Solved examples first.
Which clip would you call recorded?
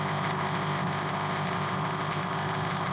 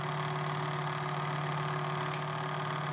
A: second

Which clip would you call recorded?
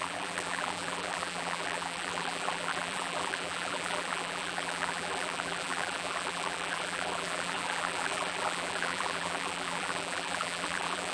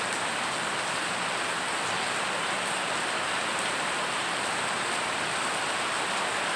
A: second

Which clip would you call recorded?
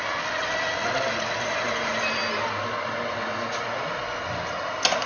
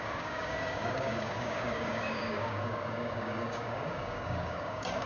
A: first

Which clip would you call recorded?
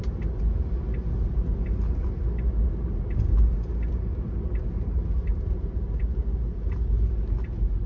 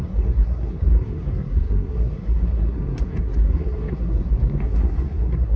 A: first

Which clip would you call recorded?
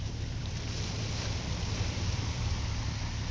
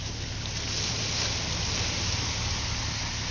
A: second